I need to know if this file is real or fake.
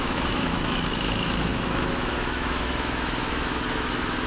fake